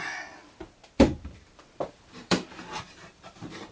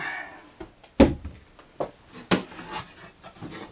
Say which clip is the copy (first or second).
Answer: first